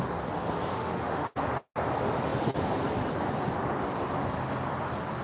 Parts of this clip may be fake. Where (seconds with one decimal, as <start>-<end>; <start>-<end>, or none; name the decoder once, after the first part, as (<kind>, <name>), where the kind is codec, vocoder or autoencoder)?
0.7-1.4 (autoencoder, DAC-VAE)

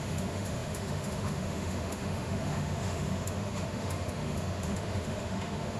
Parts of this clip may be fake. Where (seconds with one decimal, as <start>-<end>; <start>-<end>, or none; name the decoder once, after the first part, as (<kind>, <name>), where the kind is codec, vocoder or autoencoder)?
0.0-5.8 (autoencoder, DAC-VAE)

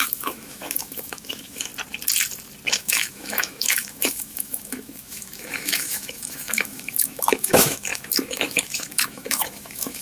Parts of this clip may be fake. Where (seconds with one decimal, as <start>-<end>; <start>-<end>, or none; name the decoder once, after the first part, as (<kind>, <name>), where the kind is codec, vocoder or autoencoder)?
0.0-1.7 (autoencoder, DAC-VAE); 2.7-10.0

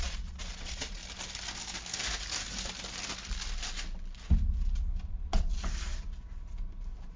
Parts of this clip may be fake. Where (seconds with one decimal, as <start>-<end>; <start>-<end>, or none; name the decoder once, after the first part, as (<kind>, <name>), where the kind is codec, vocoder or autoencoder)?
0.0-1.0 (vocoder, Vocos); 5.1-5.5